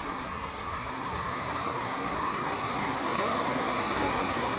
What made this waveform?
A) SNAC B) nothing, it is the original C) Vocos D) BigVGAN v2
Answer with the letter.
A